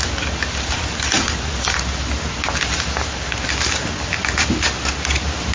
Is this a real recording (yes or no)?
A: yes